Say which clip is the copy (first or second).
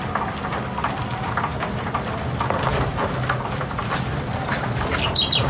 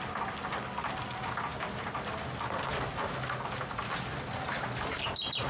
first